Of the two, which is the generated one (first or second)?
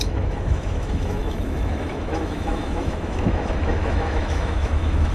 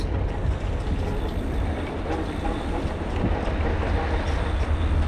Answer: first